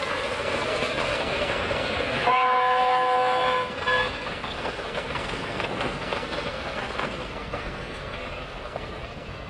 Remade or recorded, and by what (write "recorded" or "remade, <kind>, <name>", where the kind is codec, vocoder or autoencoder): remade, codec, SNAC